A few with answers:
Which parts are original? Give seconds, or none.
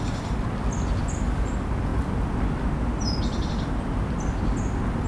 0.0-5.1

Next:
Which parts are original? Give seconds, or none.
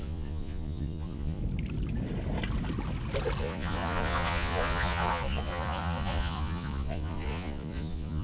1.4-3.4